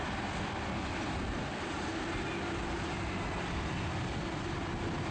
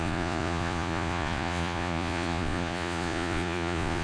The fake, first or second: second